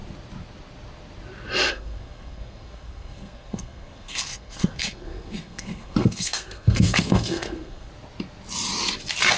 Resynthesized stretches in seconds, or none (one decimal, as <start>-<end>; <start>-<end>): 1.7-7.9